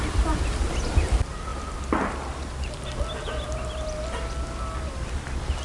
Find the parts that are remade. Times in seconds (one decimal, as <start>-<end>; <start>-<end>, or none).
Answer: none